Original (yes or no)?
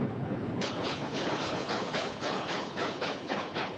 no